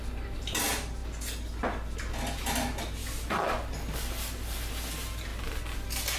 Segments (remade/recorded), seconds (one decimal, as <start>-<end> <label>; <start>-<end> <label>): 0.0-6.2 recorded